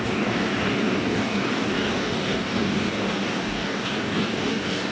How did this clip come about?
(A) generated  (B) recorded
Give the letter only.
A